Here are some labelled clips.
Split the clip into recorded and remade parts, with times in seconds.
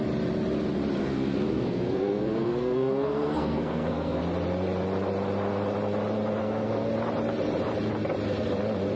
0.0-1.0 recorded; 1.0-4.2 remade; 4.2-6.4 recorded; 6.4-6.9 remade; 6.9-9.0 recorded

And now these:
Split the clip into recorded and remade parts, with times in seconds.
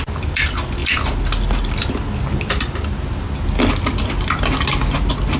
0.0-5.4 recorded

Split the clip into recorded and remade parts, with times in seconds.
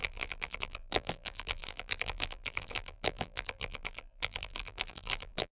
0.0-5.5 remade